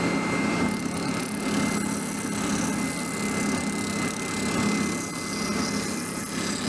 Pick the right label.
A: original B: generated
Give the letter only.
A